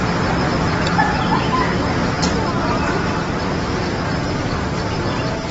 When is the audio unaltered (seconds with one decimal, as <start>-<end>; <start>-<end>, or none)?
0.0-2.2; 4.2-5.5